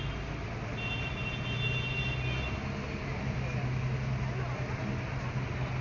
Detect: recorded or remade recorded